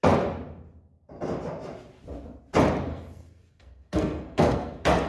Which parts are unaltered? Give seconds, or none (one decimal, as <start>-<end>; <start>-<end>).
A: 0.0-2.9